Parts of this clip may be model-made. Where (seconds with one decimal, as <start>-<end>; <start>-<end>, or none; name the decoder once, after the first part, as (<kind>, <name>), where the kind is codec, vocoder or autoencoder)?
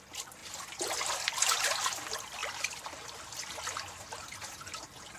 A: none